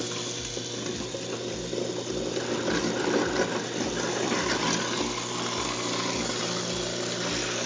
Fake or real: real